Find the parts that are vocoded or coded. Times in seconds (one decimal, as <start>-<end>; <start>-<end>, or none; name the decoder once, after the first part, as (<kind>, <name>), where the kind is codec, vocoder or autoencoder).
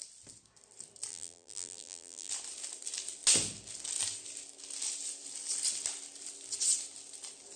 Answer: 1.1-2.3 (vocoder, BigVGAN v2)